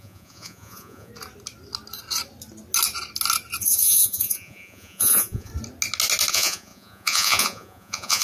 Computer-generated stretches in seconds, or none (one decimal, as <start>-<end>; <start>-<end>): 0.0-1.1; 3.6-5.5; 6.3-8.2